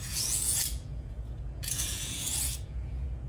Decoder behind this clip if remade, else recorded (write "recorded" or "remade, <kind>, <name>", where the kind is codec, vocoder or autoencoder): remade, vocoder, Vocos